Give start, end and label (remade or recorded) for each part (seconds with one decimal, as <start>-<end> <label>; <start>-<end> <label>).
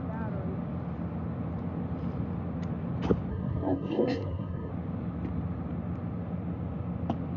0.0-3.3 recorded; 3.3-4.7 remade; 4.7-7.4 recorded